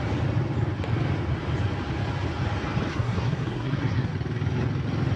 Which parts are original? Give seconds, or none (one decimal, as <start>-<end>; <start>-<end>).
0.0-2.9; 4.1-5.2